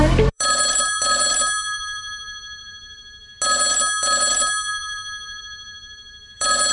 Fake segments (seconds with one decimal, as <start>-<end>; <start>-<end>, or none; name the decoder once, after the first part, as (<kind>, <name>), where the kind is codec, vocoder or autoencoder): 0.0-3.3 (vocoder, BigVGAN v2); 4.3-6.7